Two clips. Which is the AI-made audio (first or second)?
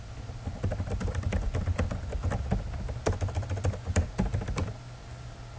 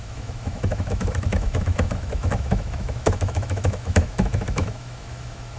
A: second